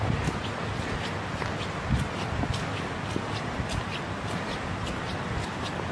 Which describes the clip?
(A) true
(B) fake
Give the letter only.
A